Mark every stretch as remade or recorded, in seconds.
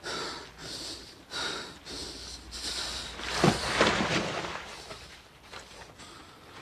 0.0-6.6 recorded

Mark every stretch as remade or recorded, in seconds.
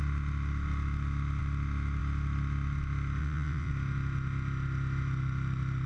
0.0-3.2 recorded; 3.2-3.7 remade; 3.7-5.9 recorded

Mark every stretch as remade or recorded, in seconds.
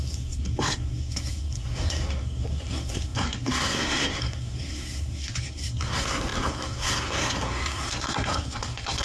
0.0-9.0 remade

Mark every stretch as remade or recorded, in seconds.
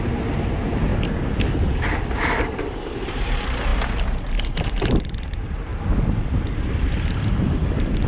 0.0-0.9 remade; 0.9-2.0 recorded; 2.0-5.7 remade; 5.7-6.7 recorded; 6.7-8.1 remade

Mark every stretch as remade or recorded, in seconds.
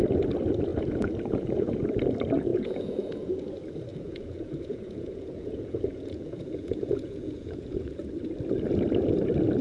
0.0-0.7 recorded; 0.7-1.8 remade; 1.8-2.5 recorded; 2.5-3.5 remade; 3.5-3.9 recorded; 3.9-8.1 remade; 8.1-9.6 recorded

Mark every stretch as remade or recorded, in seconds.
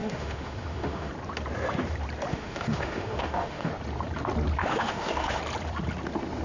0.0-1.1 remade; 1.1-2.3 recorded; 2.3-3.7 remade; 3.7-4.6 recorded; 4.6-5.4 remade; 5.4-6.4 recorded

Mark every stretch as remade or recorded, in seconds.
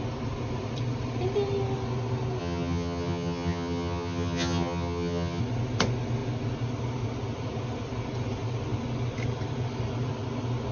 0.0-2.4 recorded; 2.4-5.4 remade; 5.4-10.7 recorded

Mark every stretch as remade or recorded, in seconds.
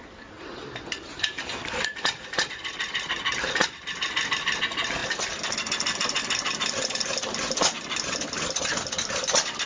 0.0-9.7 recorded